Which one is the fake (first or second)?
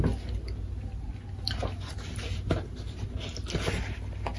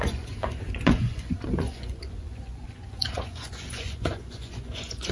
second